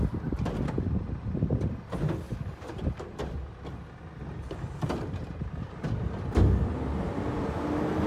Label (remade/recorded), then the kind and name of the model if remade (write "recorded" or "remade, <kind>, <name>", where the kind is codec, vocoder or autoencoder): recorded